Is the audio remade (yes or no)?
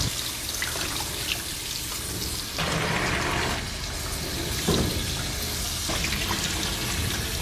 no